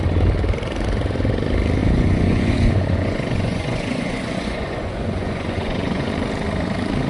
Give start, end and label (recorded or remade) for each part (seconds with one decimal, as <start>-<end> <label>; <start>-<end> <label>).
0.0-1.8 recorded; 1.8-6.1 remade; 6.1-7.1 recorded